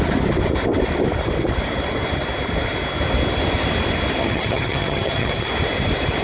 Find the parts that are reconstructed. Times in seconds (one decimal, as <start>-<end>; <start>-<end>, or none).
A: 4.2-5.5